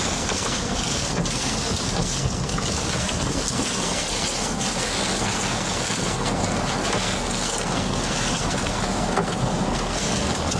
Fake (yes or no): yes